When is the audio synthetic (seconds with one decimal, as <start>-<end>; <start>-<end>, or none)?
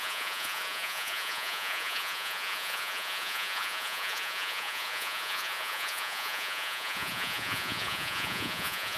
0.0-9.0